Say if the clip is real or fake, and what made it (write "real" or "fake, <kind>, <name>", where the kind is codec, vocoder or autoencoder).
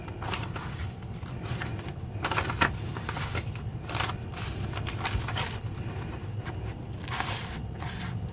fake, vocoder, BigVGAN v2